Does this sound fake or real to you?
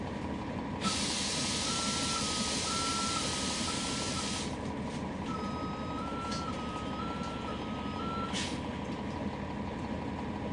real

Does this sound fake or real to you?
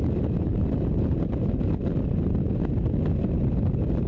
real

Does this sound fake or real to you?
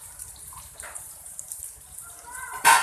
fake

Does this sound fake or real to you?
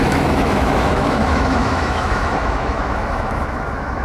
fake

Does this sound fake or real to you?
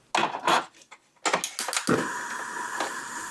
real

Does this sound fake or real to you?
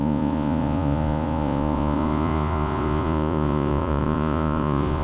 fake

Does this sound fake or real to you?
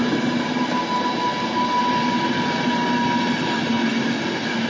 real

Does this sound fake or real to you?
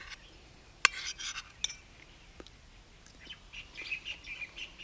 real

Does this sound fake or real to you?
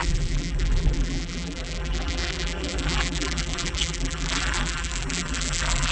fake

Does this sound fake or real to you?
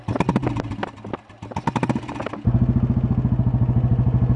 real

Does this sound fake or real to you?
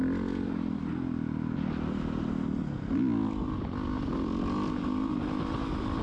real